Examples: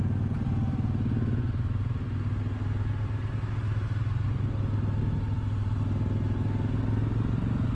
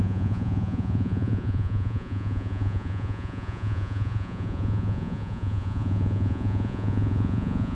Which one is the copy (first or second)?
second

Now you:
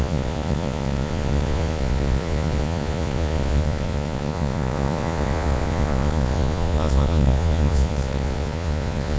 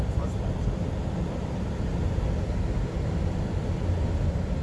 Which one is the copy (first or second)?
first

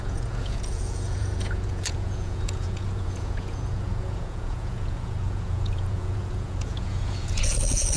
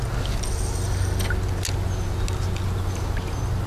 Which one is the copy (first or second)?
first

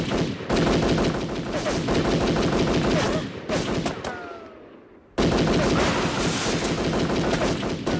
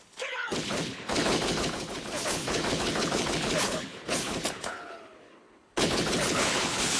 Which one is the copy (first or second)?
second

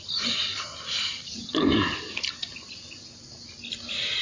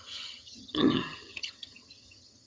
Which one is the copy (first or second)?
second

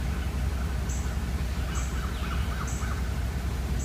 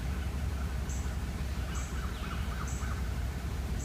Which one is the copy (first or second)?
second